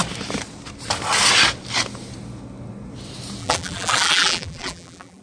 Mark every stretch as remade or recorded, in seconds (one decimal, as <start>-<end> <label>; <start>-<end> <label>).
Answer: 0.0-3.4 recorded; 3.4-5.2 remade

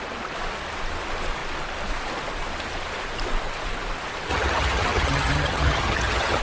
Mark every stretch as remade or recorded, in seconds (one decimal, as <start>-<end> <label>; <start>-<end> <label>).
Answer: 0.0-4.3 recorded; 4.3-6.4 remade

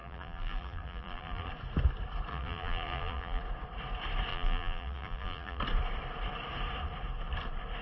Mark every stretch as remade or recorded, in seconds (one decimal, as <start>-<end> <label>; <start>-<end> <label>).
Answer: 0.0-1.5 remade; 1.5-2.3 recorded; 2.3-3.4 remade; 3.4-4.3 recorded; 4.3-5.6 remade; 5.6-7.8 recorded

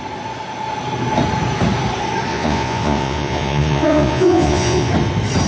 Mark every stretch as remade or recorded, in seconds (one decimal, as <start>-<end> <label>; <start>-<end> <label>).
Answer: 0.0-2.3 recorded; 2.3-4.9 remade; 4.9-5.5 recorded

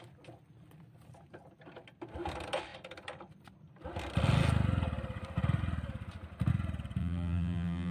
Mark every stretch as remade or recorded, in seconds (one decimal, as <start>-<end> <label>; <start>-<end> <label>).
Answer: 0.0-7.0 recorded; 7.0-7.9 remade

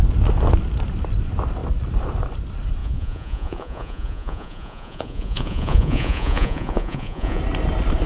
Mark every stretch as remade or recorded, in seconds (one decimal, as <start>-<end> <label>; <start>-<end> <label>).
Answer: 0.0-2.8 recorded; 2.8-7.4 remade; 7.4-8.1 recorded

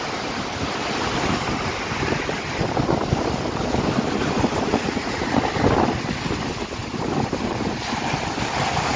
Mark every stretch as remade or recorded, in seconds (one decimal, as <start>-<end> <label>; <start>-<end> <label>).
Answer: 0.0-4.7 recorded; 4.7-5.4 remade; 5.4-9.0 recorded